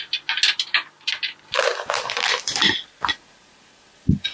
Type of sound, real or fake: real